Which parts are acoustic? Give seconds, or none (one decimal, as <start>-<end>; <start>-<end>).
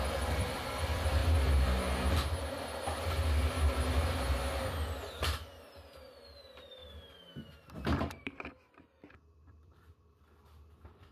1.2-5.6; 6.8-8.0